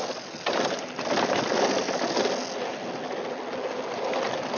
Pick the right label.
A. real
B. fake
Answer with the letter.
A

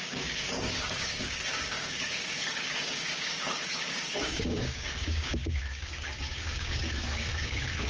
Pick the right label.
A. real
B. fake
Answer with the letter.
B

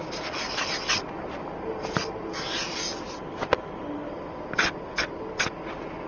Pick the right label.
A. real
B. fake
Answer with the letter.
A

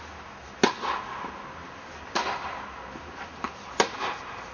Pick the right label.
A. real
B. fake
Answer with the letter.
A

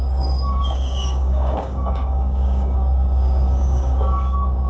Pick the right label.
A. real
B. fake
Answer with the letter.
B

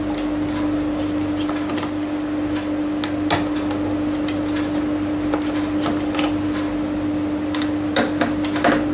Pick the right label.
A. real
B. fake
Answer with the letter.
A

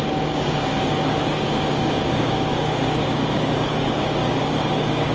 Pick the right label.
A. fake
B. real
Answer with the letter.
A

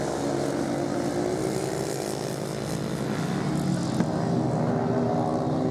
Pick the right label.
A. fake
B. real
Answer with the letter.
B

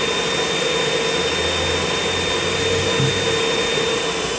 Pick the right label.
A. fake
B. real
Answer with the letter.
B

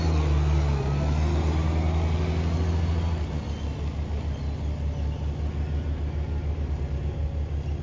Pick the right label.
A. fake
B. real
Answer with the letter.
B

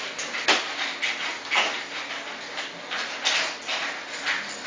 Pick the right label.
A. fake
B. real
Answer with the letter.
B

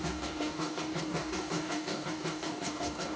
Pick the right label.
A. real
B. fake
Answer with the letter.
B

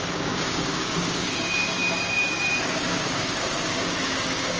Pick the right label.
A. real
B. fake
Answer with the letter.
B